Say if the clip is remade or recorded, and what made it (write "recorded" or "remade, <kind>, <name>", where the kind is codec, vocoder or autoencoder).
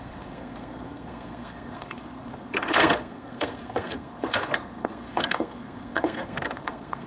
remade, codec, SNAC